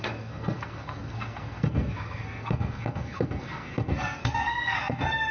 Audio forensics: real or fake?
fake